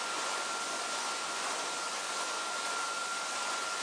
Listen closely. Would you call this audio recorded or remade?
remade